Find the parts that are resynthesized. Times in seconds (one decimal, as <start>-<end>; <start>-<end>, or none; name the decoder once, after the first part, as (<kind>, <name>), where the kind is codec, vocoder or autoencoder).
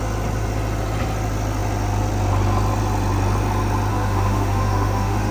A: 3.9-5.3 (autoencoder, DAC-VAE)